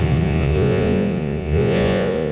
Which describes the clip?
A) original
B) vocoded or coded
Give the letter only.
B